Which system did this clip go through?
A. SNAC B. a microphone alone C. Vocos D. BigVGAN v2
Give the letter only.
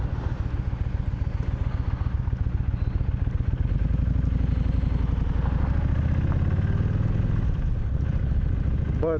B